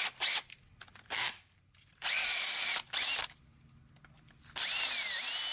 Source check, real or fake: real